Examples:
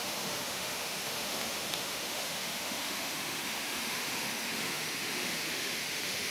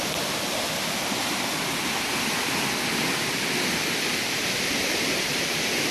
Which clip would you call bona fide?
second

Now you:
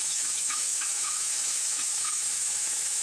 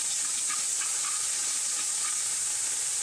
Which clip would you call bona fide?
second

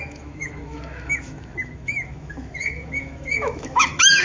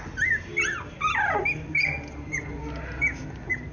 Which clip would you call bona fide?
second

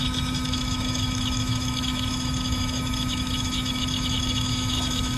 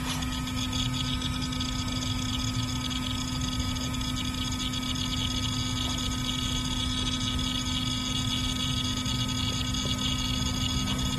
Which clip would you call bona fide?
second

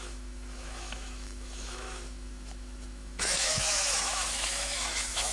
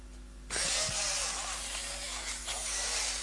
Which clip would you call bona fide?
second